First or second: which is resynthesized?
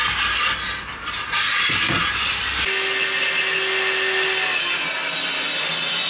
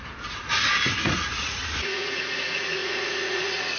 second